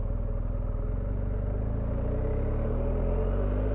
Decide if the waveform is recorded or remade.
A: recorded